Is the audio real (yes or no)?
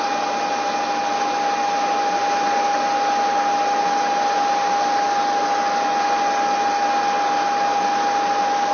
yes